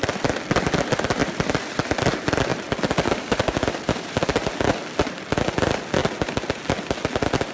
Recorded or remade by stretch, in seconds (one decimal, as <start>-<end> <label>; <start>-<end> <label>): 0.0-1.2 recorded; 1.2-1.9 remade; 1.9-2.5 recorded; 2.5-4.2 remade; 4.2-7.5 recorded